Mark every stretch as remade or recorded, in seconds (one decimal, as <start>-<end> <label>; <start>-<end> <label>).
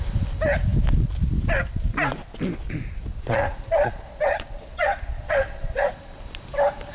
0.0-3.1 recorded; 3.1-5.9 remade; 5.9-6.9 recorded